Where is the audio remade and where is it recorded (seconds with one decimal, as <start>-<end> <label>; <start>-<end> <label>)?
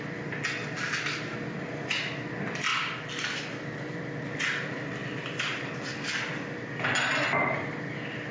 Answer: 0.0-8.3 recorded